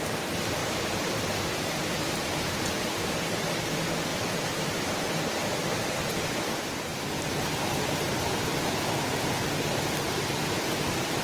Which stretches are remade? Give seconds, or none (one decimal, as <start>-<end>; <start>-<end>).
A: 0.6-3.1; 4.1-5.0; 6.9-9.4